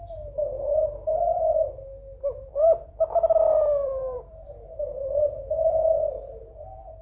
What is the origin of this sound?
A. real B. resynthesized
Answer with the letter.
B